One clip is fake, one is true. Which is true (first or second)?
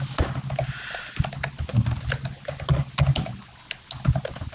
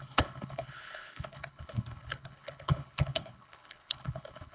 first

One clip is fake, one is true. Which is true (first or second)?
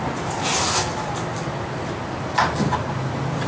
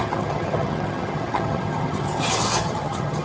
first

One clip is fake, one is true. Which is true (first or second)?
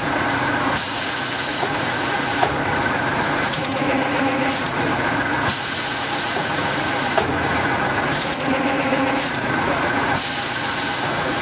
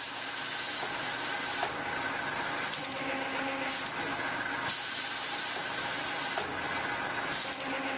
second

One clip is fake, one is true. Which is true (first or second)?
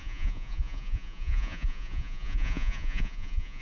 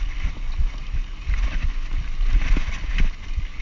second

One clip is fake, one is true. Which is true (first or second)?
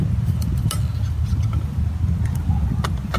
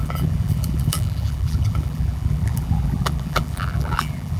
first